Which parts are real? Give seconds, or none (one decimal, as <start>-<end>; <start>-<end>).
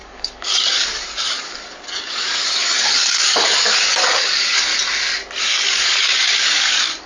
4.7-5.4